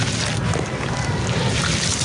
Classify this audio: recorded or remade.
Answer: recorded